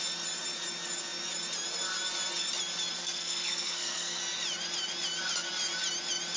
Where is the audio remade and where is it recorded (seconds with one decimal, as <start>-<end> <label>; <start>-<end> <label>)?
0.0-3.0 recorded; 3.0-4.2 remade; 4.2-6.4 recorded